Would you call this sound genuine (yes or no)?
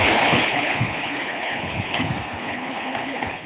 no